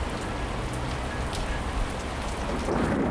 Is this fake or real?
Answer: real